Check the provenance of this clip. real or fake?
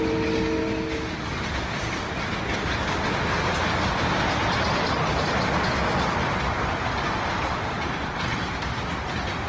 real